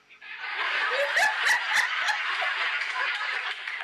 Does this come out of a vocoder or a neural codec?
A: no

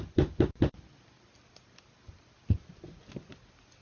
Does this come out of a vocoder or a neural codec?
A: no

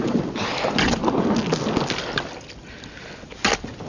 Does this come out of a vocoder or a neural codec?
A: no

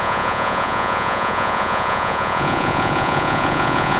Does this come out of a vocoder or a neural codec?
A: yes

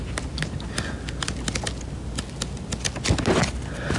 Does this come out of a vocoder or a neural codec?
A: no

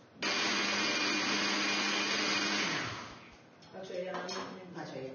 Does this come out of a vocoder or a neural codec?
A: no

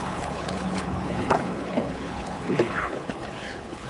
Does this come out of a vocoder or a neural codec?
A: yes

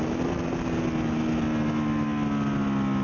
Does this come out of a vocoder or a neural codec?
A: no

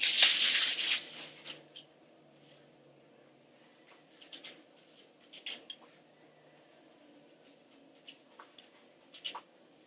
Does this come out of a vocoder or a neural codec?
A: no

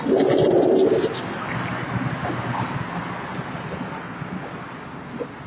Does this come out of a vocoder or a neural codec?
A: no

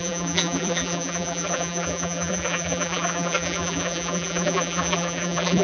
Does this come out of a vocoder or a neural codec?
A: yes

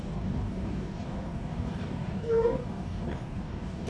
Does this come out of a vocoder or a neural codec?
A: yes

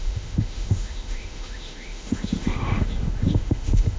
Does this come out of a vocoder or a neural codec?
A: yes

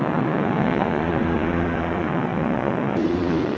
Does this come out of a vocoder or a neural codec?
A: yes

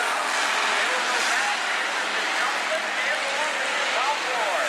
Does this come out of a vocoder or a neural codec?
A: no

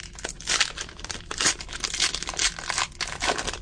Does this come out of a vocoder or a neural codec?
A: no